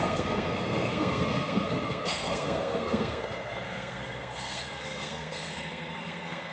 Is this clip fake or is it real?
fake